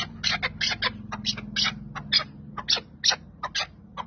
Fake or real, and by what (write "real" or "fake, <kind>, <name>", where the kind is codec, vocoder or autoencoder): real